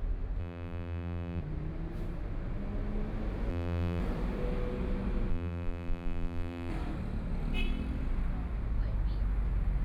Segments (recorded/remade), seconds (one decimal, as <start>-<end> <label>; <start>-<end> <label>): 0.0-0.4 recorded; 0.4-1.4 remade; 1.4-3.5 recorded; 3.5-4.0 remade; 4.0-5.3 recorded; 5.3-6.7 remade; 6.7-9.8 recorded